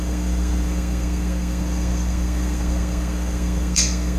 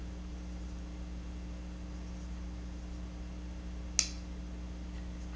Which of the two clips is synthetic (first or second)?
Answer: first